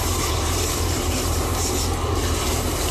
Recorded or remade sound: remade